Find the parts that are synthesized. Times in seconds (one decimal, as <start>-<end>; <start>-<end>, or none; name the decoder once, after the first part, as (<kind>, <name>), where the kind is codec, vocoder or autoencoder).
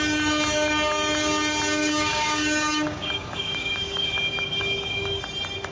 1.8-5.2 (codec, DAC)